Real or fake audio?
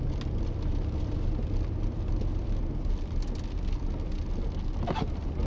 real